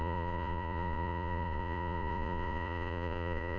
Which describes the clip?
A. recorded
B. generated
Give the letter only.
B